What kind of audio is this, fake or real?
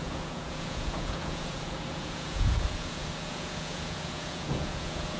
fake